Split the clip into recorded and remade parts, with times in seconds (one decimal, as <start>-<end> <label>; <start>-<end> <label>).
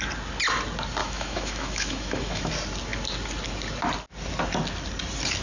0.0-1.0 recorded; 1.0-2.5 remade; 2.5-5.4 recorded